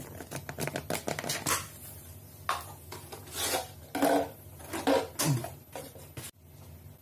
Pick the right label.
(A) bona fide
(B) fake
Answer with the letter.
A